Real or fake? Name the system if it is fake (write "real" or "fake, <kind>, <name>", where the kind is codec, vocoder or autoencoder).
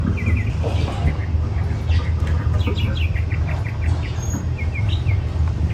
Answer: real